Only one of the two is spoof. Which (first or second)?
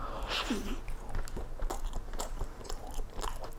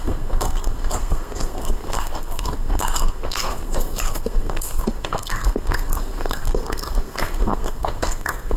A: second